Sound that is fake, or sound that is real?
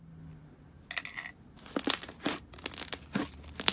real